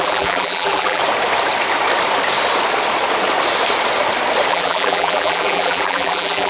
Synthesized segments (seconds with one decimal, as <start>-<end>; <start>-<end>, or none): 0.0-1.0; 4.5-6.5